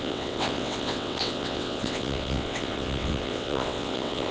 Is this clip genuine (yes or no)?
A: no